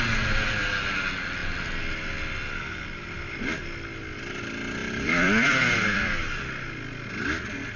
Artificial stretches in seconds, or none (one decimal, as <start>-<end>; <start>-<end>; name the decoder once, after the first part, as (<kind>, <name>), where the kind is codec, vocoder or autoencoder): 4.8-6.4 (vocoder, BigVGAN v2)

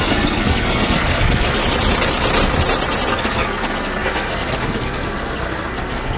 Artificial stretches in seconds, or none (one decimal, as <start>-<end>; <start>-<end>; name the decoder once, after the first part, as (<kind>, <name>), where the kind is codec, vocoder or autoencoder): 0.0-1.6 (codec, SNAC); 3.1-6.2

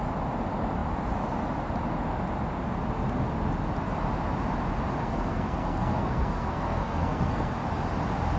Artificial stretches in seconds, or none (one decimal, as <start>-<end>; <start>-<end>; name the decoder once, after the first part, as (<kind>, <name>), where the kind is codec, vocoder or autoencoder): 5.0-7.5 (codec, SNAC)

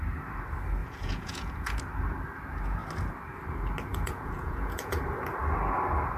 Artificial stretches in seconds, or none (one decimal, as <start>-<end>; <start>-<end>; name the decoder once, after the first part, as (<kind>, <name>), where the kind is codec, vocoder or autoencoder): 0.8-1.8 (vocoder, Vocos); 3.9-5.0

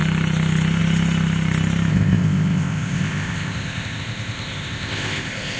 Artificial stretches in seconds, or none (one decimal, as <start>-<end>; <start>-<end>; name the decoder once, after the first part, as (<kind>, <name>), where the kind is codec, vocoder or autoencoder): 1.9-5.6 (codec, ZipCodec)

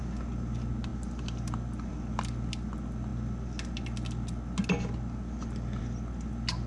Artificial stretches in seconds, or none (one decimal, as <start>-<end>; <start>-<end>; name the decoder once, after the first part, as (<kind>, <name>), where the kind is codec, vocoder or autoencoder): none

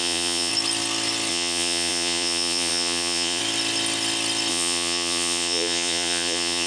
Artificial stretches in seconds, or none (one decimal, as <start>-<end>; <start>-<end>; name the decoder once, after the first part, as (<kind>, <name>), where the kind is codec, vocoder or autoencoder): 0.0-0.5 (vocoder, Vocos); 1.3-3.4; 4.5-6.7